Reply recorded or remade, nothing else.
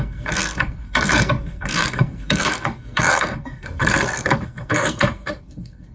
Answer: remade